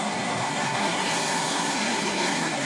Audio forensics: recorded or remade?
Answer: remade